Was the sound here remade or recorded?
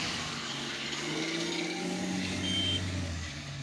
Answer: remade